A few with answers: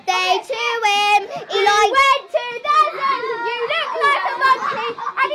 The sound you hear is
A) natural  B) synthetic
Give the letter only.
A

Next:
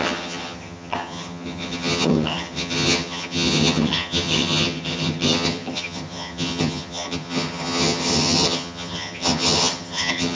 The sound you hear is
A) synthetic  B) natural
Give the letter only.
A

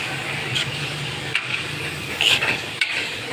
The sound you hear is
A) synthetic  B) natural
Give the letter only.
A